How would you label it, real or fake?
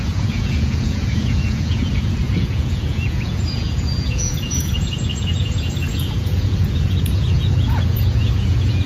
fake